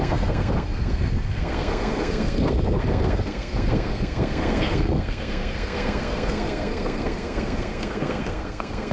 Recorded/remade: remade